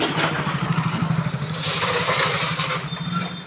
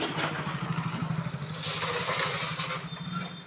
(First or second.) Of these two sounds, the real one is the second